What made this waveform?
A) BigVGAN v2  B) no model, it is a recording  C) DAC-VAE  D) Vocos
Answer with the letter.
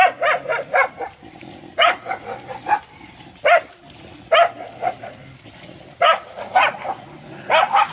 B